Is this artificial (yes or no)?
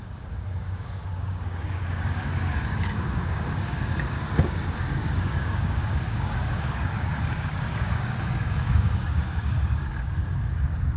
yes